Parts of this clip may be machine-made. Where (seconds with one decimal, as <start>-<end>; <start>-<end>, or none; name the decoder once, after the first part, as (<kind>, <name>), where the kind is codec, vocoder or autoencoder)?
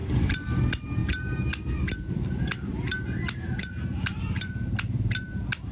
0.0-1.0 (vocoder, BigVGAN v2); 2.1-2.7; 3.9-5.7